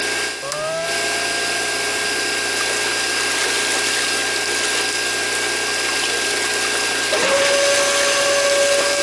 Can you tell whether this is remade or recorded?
recorded